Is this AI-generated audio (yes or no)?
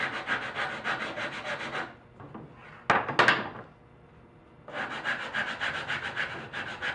no